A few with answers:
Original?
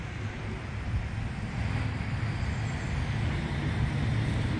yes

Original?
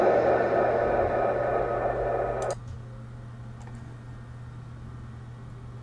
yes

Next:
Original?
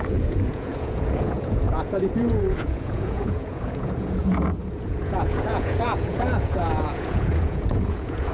no